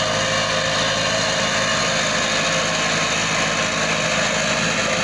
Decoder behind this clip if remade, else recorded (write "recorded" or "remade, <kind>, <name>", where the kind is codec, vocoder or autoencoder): recorded